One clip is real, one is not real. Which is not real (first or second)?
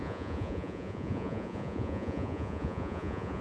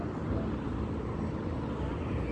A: first